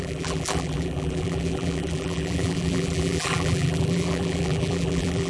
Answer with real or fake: fake